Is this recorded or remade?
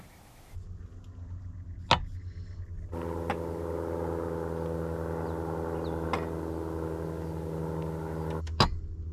recorded